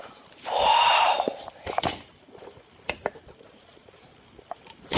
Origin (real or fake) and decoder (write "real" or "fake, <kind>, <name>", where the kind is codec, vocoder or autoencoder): fake, vocoder, BigVGAN v2